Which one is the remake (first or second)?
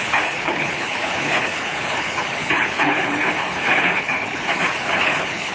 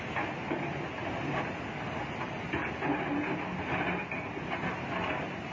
first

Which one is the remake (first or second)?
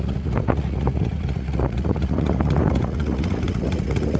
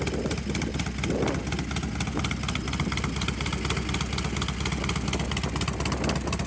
first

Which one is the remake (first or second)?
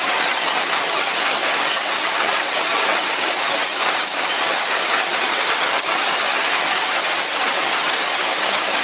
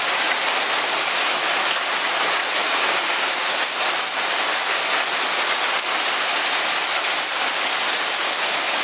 first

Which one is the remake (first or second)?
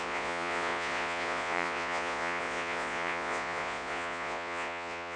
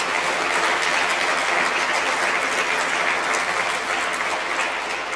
first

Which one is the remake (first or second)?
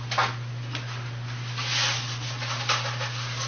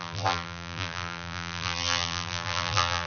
second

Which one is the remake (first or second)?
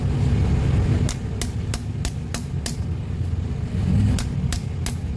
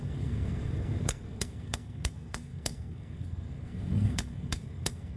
second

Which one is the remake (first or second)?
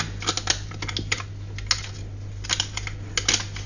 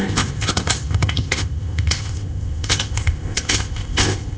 second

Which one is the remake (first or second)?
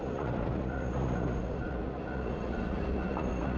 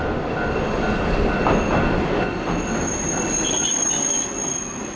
first